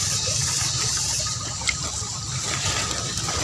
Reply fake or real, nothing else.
real